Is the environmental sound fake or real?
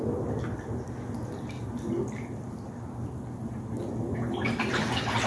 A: real